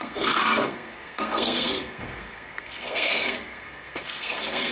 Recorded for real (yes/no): no